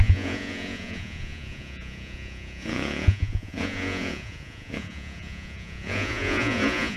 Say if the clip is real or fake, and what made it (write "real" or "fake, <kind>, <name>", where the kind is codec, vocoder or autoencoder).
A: fake, vocoder, Vocos